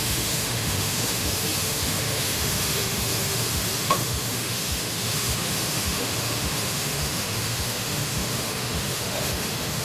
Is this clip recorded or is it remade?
remade